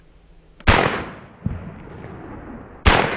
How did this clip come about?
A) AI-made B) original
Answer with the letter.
B